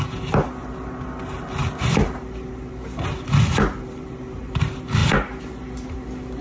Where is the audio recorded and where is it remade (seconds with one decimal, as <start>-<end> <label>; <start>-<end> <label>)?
0.0-6.4 recorded